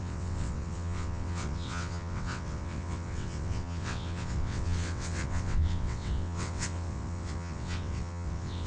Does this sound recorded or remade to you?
remade